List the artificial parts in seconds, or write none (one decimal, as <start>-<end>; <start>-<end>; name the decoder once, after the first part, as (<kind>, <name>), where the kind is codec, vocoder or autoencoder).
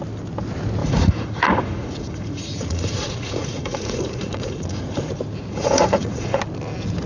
0.8-5.1 (vocoder, Vocos); 5.5-6.4